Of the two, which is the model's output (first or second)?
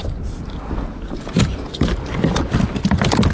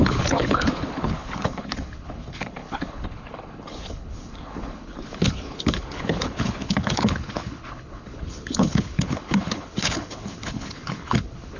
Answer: second